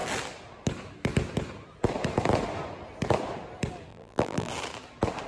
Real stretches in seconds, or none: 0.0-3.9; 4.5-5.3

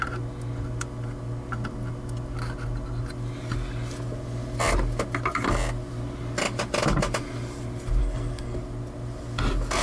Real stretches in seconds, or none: 0.0-8.0; 8.6-9.8

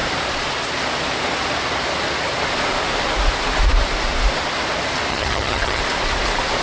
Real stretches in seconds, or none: 0.0-5.1; 5.8-6.6

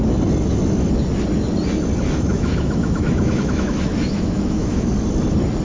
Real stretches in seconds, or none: 0.0-2.3; 4.9-5.6

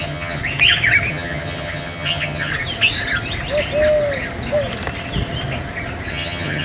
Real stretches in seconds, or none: 0.4-1.1; 2.5-6.1

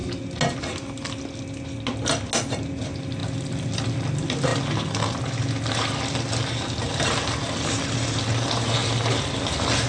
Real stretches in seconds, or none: 0.0-9.9

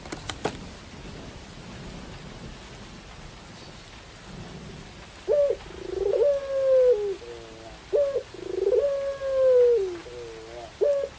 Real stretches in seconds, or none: 0.0-11.2

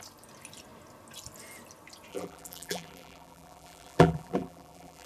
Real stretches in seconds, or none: 0.0-2.1